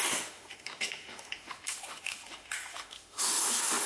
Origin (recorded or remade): remade